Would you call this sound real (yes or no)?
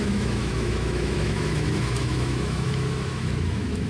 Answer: no